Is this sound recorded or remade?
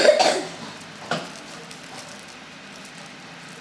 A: recorded